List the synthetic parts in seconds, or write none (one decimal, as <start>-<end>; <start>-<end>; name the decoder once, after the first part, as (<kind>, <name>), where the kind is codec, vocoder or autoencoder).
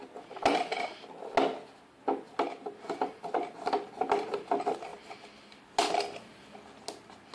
none